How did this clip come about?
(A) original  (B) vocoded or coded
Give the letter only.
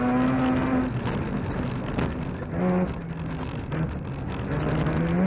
A